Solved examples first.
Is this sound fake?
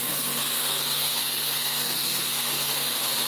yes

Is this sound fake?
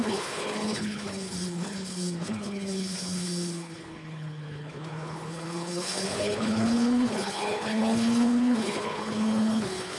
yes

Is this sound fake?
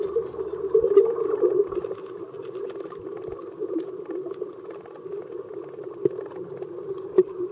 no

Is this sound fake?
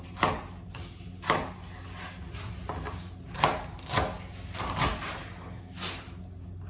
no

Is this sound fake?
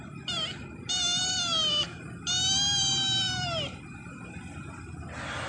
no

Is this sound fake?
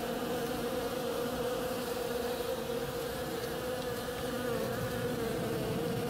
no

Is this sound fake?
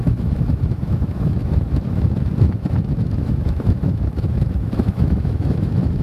yes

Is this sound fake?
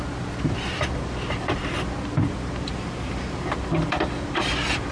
yes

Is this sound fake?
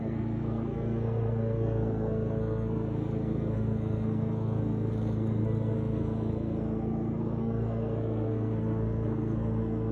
yes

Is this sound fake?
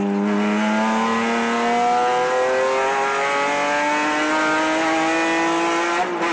no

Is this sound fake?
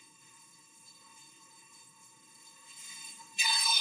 yes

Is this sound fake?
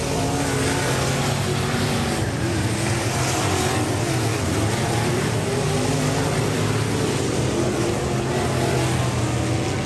no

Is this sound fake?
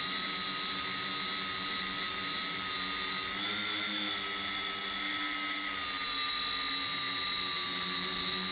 no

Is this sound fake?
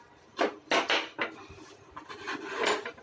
no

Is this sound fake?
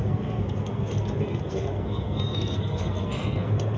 yes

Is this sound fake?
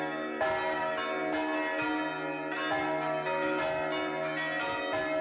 no